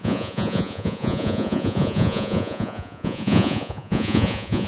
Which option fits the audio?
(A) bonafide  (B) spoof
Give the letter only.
B